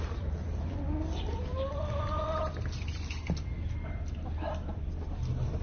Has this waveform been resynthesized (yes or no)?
yes